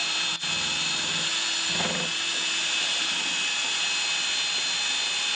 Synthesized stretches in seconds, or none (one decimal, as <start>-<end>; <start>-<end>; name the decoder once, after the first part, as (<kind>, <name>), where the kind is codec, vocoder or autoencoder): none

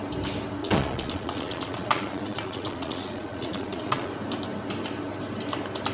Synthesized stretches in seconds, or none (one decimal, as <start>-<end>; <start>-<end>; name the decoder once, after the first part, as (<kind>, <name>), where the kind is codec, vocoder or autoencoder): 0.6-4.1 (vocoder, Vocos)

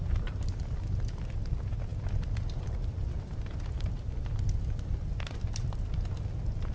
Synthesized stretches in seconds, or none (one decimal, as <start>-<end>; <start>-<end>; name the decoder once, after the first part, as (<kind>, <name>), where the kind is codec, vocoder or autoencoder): none

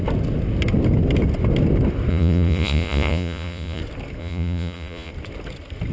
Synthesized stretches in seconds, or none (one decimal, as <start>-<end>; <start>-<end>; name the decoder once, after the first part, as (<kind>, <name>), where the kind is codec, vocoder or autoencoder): 2.1-3.8 (vocoder, Vocos); 4.2-5.1

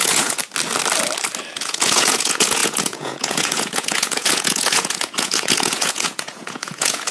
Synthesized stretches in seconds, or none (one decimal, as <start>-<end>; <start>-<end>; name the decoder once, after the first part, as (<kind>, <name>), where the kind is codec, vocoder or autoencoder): 0.0-0.4 (vocoder, Vocos); 1.5-7.1